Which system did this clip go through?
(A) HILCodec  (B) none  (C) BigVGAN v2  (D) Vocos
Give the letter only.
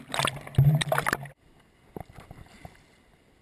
B